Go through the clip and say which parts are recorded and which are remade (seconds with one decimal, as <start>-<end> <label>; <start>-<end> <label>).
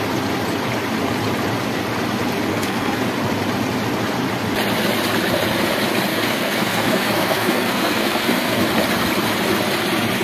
0.0-2.5 recorded; 2.5-3.0 remade; 3.0-6.1 recorded; 6.1-8.6 remade; 8.6-10.2 recorded